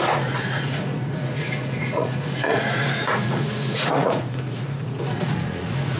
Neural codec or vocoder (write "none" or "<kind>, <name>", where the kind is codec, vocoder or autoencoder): vocoder, Vocos